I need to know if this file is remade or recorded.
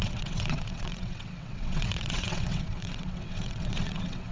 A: remade